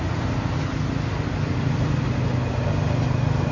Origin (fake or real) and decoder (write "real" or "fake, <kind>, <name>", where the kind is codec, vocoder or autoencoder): real